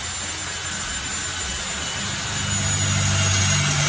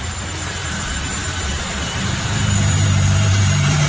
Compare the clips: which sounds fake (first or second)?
second